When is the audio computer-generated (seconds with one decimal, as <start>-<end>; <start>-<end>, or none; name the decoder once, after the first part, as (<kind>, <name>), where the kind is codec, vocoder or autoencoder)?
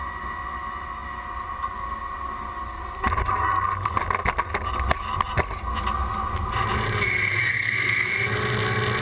7.5-8.1 (codec, SNAC)